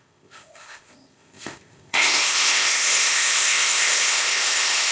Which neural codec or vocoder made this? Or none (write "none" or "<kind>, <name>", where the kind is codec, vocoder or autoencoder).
codec, ZipCodec